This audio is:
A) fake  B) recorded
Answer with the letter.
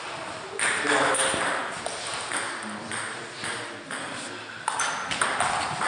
B